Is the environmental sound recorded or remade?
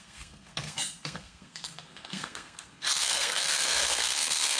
remade